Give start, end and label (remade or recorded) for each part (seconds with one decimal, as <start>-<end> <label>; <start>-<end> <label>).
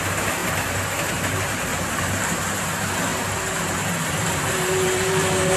0.0-0.4 remade; 0.4-1.1 recorded; 1.1-5.6 remade